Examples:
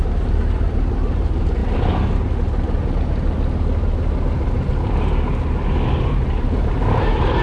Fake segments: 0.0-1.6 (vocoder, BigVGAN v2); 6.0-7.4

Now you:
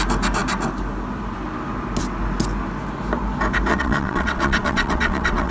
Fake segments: 3.7-5.5 (vocoder, WaveNeXt)